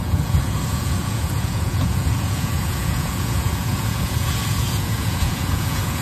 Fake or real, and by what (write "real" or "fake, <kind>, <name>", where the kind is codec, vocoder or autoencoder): fake, vocoder, Vocos